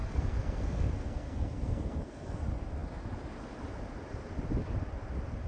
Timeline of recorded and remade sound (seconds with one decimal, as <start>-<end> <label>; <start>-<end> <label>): 0.0-2.4 remade; 2.4-5.5 recorded